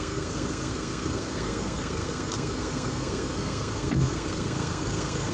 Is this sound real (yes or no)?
no